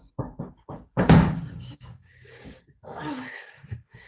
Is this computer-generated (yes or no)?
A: yes